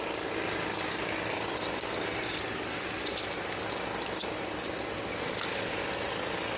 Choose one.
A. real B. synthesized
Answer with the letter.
A